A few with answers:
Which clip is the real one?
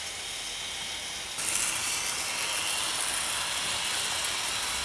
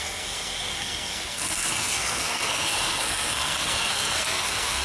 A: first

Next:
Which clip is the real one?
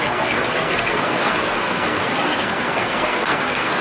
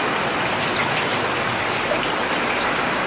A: second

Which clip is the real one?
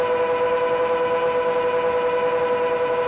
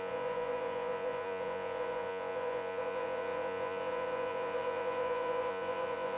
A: first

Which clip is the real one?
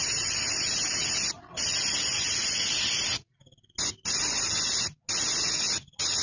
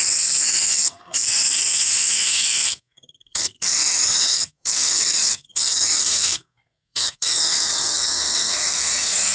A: first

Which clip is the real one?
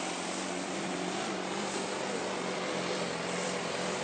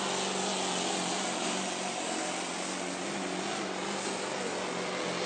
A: second